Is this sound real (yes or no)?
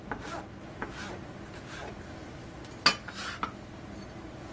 yes